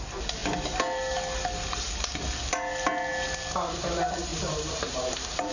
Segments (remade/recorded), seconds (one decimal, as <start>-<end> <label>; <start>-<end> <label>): 0.0-4.3 recorded; 4.3-5.5 remade